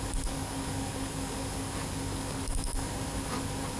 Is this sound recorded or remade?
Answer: remade